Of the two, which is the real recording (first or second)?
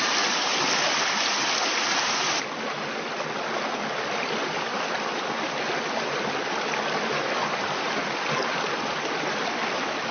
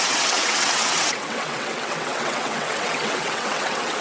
first